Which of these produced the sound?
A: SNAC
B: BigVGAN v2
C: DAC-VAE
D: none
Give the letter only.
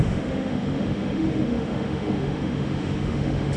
C